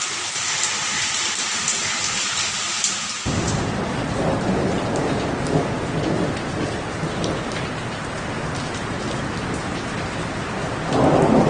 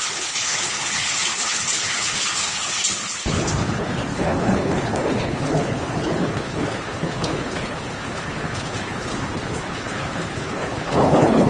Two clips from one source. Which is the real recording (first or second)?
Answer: first